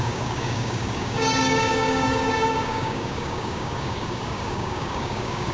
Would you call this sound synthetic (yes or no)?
yes